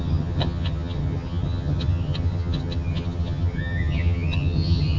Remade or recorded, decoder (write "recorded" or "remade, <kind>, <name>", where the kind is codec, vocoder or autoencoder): remade, vocoder, HiFi-GAN